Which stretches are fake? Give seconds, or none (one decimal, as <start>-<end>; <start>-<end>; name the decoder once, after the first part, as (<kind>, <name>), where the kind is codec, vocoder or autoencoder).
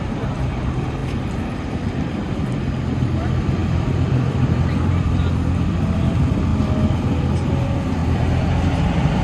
0.0-6.5 (vocoder, BigVGAN v2); 7.3-9.2